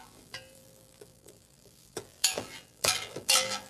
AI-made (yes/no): yes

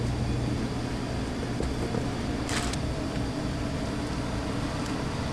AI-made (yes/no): no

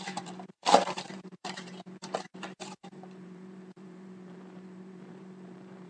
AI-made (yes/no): yes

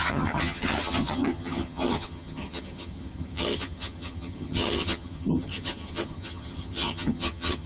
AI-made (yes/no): yes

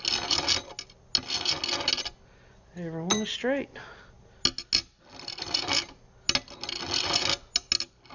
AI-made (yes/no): no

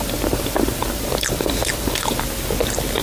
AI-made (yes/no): no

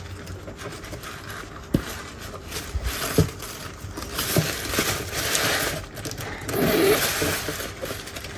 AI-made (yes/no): no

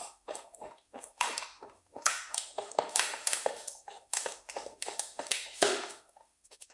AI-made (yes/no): yes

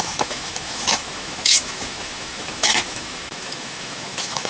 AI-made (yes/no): yes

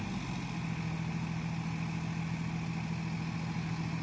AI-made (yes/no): no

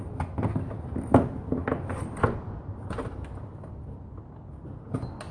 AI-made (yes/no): no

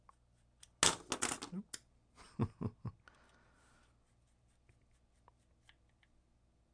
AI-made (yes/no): no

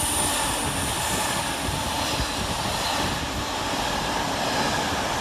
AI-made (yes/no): no